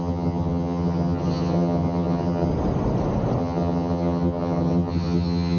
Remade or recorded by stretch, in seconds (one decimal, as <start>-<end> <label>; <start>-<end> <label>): 0.0-2.5 remade; 2.5-3.4 recorded; 3.4-5.6 remade